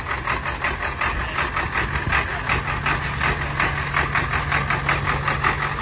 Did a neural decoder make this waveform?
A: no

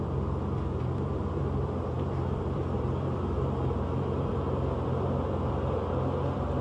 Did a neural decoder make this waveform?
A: yes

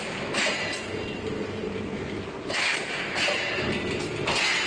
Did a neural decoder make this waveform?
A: no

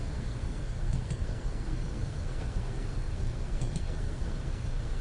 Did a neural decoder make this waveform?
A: yes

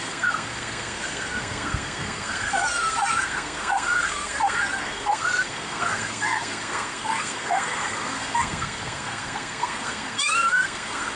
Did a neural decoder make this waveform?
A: yes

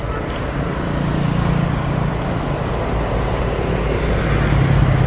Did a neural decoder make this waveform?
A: no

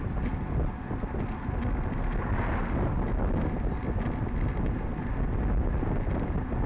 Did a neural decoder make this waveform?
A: no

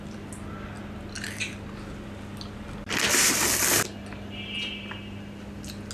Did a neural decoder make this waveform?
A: no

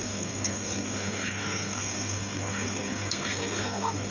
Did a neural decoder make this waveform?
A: yes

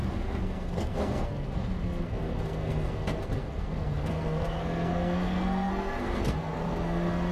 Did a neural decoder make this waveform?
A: yes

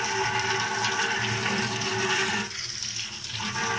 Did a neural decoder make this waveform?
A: no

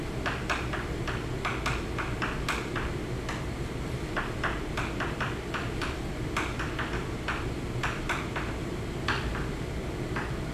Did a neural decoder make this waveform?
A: no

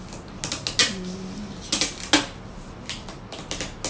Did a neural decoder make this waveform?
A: no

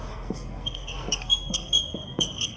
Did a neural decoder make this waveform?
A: yes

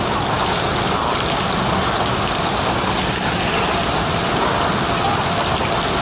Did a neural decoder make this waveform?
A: no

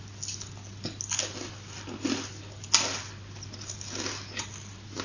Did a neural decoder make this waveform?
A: no